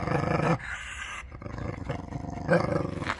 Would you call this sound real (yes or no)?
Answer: yes